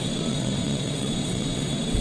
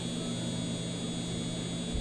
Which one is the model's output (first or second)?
first